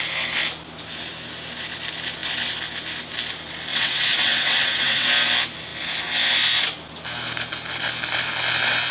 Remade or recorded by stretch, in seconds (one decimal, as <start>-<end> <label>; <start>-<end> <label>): 0.0-3.7 recorded; 3.7-5.1 remade; 5.1-8.9 recorded